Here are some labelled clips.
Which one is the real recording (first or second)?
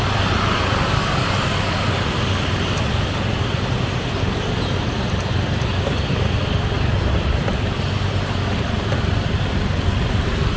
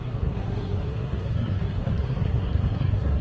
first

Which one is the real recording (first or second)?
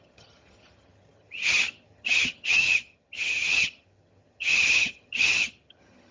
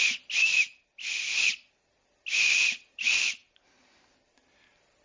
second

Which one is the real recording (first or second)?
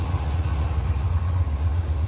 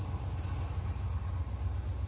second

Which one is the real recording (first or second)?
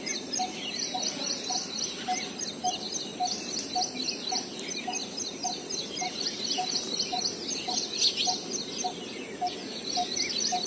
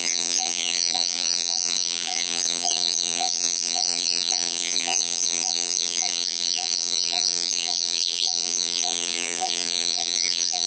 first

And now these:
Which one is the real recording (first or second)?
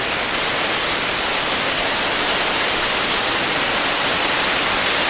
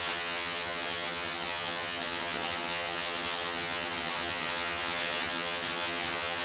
first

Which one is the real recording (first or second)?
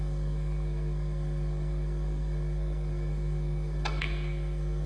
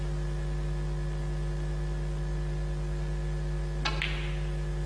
second